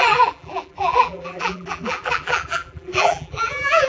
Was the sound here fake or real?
fake